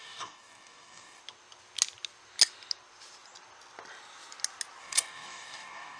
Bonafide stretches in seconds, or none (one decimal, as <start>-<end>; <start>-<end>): 1.2-4.8